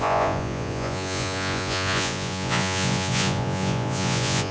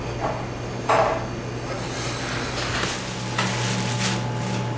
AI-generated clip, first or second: first